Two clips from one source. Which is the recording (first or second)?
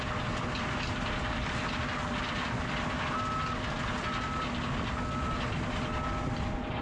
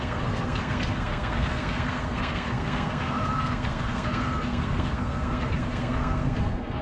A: first